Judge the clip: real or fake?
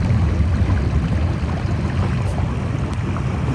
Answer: real